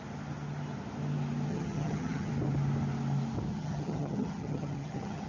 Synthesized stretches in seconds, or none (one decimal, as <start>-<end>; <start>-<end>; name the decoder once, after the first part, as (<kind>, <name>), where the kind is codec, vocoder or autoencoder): 1.5-2.3 (vocoder, HiFi-GAN); 3.5-5.3